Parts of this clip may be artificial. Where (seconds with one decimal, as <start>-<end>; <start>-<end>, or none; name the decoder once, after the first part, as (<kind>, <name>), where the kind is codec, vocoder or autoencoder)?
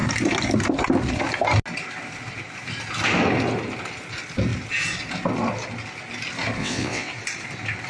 6.6-7.1 (vocoder, WaveNeXt)